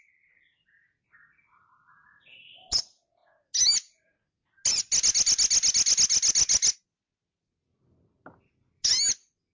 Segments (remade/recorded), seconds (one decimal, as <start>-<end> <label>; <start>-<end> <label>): 0.0-9.5 recorded